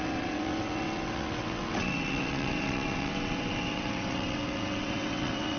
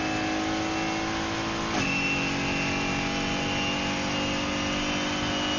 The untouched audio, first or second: second